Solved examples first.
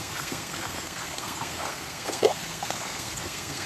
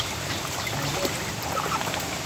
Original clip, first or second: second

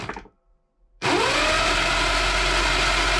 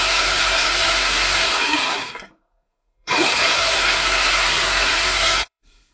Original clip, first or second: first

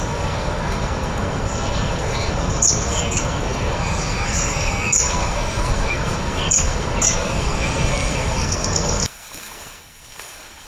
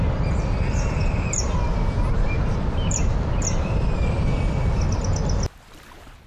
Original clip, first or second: second